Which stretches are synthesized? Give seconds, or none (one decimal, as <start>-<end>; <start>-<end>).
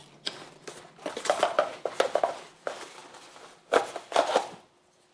none